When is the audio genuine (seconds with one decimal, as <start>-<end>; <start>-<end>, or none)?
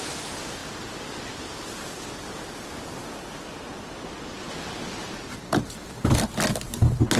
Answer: 0.0-7.2